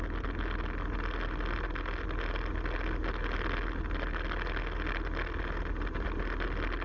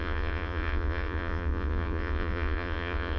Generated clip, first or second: second